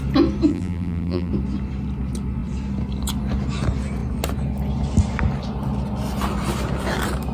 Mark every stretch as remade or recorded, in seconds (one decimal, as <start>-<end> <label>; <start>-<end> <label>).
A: 0.0-0.5 recorded; 0.5-1.3 remade; 1.3-7.3 recorded